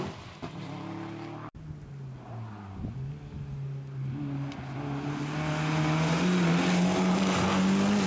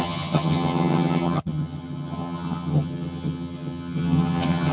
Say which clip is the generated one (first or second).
second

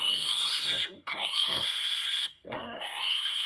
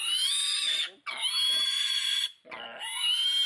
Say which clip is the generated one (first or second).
first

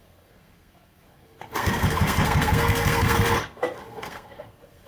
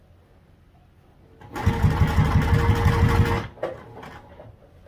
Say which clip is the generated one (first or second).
first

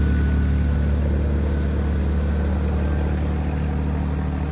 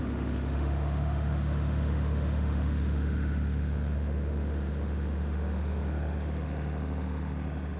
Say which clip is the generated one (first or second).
second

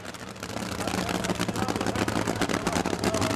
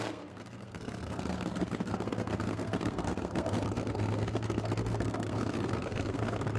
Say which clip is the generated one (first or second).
second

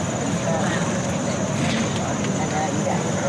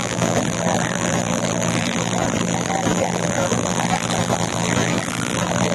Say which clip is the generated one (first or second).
second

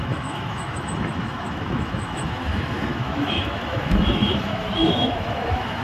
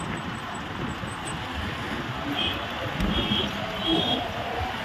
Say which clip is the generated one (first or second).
first